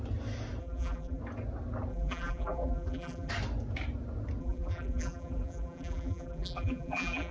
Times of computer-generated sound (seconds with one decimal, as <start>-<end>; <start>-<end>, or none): 0.6-1.2; 1.9-3.3; 4.4-7.3